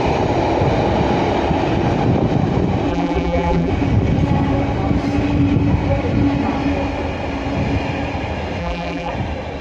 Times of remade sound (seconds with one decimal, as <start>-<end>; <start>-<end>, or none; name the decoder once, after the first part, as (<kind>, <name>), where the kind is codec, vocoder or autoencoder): 2.9-3.7 (vocoder, BigVGAN v2); 8.6-9.1